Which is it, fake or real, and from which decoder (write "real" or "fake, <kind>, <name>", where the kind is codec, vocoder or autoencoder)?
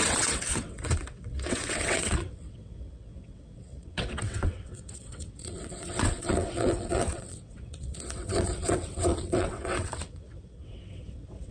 fake, vocoder, WaveNeXt